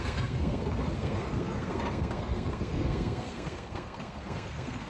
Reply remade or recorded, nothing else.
remade